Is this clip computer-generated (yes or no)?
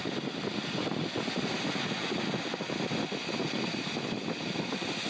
no